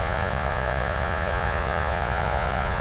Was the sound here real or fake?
fake